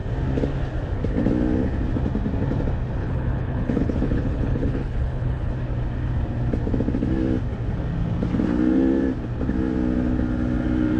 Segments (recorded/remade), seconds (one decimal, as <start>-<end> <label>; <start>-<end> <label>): 0.0-3.0 recorded; 3.0-5.5 remade; 5.5-11.0 recorded